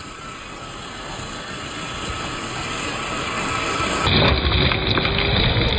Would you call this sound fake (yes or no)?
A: no